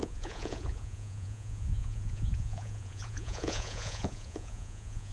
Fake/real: fake